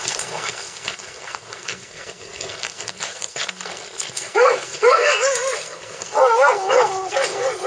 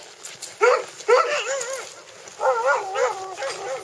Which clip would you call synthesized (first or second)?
first